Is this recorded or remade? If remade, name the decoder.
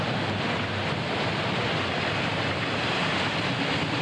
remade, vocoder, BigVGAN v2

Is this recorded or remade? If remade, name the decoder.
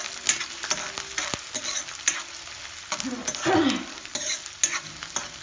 recorded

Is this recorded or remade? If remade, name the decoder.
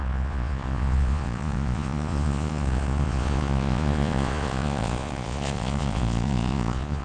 remade, vocoder, Vocos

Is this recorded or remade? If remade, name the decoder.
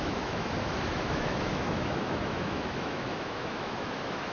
remade, autoencoder, DAC-VAE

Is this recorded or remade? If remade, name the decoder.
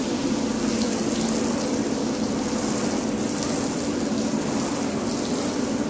recorded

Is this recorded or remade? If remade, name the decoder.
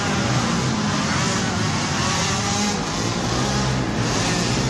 recorded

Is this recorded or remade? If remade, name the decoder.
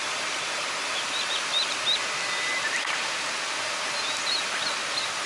recorded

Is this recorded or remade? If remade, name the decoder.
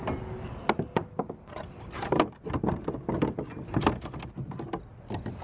recorded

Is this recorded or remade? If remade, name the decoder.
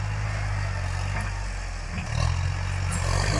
recorded